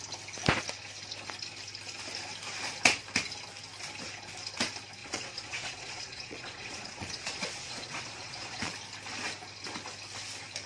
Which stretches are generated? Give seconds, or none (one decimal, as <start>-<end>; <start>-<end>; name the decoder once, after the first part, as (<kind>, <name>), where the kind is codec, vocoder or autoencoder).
5.0-8.7 (vocoder, Vocos)

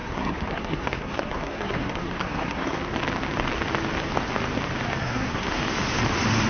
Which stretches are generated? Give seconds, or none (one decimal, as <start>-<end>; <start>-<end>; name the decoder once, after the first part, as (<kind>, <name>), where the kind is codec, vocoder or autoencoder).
0.0-2.8 (codec, SNAC); 5.0-5.6

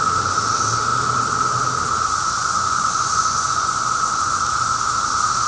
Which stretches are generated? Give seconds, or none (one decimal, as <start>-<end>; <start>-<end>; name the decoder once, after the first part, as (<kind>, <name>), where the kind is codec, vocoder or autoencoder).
2.4-4.4 (vocoder, Vocos)

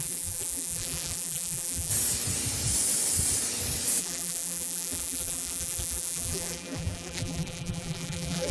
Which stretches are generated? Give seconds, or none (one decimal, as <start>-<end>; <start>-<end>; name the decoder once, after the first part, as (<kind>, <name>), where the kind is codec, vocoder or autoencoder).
0.0-1.9 (vocoder, BigVGAN v2); 4.0-8.5

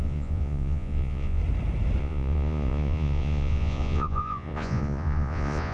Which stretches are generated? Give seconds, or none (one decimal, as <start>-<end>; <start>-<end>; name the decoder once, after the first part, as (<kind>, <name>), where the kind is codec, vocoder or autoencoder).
0.0-1.4 (vocoder, Vocos); 2.0-5.7